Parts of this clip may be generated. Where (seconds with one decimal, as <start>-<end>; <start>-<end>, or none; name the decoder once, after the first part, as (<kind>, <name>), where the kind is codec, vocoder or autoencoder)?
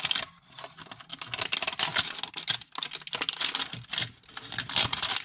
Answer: none